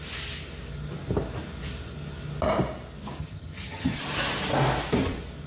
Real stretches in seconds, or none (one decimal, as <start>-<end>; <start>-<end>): 0.0-3.2; 4.0-5.5

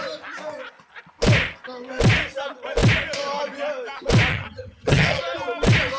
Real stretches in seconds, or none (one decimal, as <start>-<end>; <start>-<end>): 0.0-4.3; 5.2-6.0

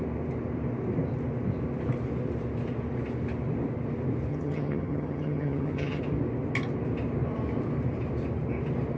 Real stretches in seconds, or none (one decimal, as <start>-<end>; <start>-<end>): 0.0-4.3; 6.0-9.0

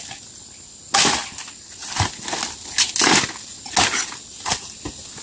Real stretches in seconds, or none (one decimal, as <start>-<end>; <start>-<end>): 0.0-5.2

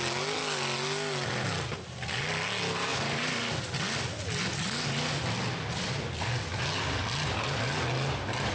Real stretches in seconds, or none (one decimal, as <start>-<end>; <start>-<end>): 0.0-8.5

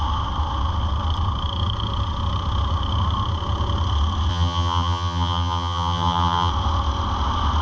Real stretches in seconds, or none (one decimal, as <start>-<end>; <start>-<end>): 0.0-4.3; 6.5-7.6

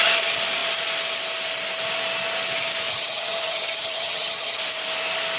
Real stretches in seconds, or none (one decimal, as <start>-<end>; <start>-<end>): 0.0-2.9; 4.6-5.4

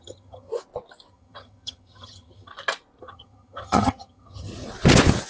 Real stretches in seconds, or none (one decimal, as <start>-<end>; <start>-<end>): 0.5-1.1; 2.5-3.0; 4.5-5.3